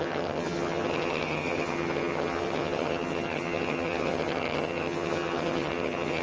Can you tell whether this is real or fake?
fake